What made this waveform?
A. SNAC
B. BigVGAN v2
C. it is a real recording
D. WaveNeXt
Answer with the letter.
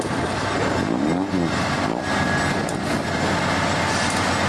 C